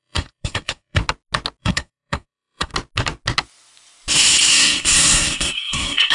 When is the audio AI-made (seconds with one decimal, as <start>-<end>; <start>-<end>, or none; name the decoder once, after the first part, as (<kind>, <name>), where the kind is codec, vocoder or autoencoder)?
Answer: 0.0-1.0 (codec, SNAC); 1.6-2.7; 4.5-6.1